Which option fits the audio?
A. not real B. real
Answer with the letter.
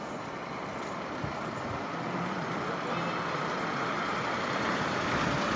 B